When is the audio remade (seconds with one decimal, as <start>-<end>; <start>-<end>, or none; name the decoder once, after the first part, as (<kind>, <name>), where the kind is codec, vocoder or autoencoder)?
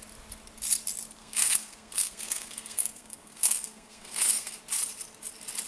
1.2-4.6 (codec, SNAC)